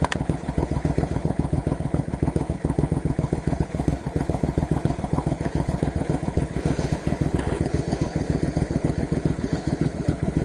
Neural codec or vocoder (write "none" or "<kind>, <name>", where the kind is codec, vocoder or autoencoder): codec, HILCodec